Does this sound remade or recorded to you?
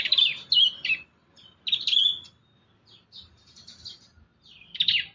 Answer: recorded